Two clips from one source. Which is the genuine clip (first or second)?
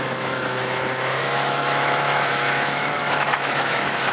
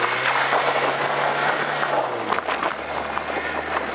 second